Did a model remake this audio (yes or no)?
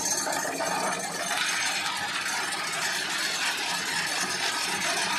no